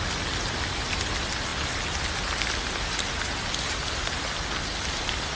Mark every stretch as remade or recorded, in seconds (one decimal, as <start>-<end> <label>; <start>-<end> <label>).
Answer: 0.0-5.4 recorded